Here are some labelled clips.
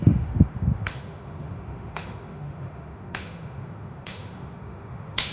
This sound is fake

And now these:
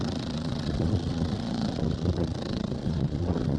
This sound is fake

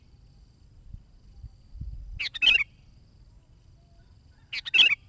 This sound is real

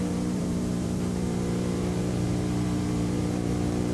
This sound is fake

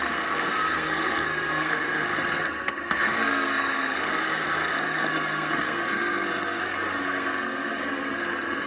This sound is fake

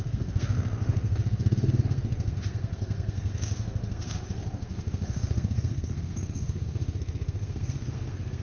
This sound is fake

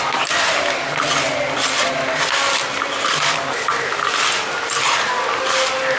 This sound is real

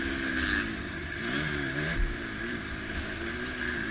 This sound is real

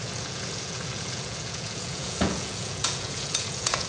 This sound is fake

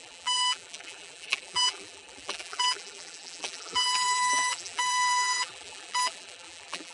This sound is fake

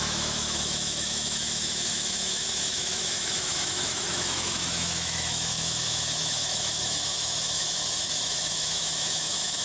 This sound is fake